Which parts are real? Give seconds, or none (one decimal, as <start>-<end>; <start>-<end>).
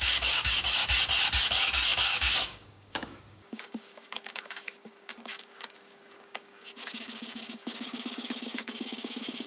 0.8-1.4